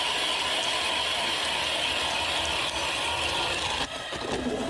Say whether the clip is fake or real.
real